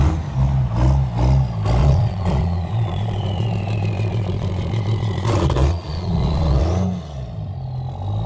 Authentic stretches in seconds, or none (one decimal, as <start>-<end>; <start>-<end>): 0.0-1.8; 6.6-8.3